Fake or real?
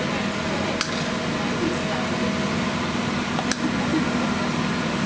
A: real